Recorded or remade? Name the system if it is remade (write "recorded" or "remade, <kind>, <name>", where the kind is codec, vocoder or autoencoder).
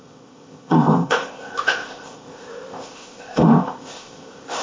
remade, codec, ZipCodec